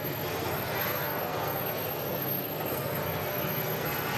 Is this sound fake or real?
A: fake